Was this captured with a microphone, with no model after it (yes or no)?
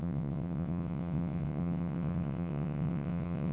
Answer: no